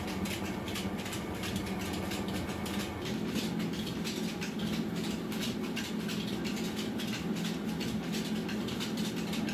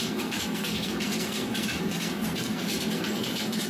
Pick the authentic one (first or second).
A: first